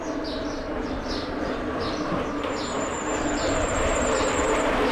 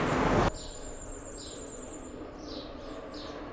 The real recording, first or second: second